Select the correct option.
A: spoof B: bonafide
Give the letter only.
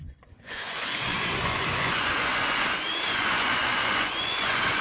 A